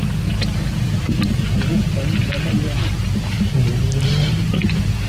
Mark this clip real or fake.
real